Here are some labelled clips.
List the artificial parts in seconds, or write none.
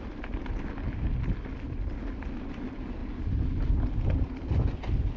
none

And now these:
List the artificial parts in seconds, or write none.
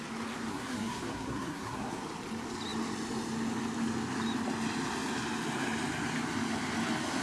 0.5-2.0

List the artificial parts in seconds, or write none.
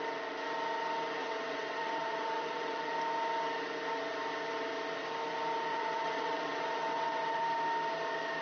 1.2-2.9; 5.7-7.4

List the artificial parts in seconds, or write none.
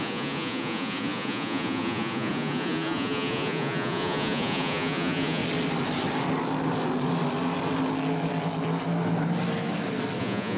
0.0-5.4; 10.2-10.6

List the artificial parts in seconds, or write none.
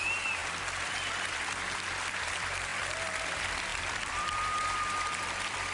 0.0-0.4; 2.3-2.7; 3.2-5.7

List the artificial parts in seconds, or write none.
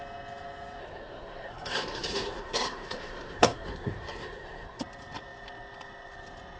0.8-4.8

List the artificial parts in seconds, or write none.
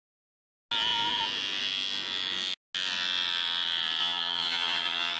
4.0-5.2